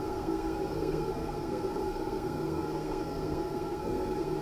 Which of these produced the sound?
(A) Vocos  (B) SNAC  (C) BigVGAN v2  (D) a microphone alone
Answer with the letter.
B